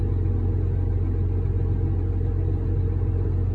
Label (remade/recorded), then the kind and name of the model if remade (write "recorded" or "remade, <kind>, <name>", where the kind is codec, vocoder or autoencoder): recorded